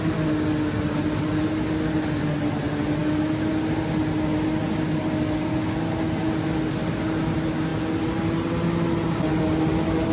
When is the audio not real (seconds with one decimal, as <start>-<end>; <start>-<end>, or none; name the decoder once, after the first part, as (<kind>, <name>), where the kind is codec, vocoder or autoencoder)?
none